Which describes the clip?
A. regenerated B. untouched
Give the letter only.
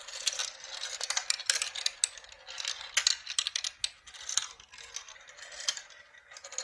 B